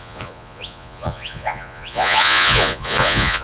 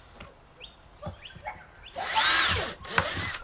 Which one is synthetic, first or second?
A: first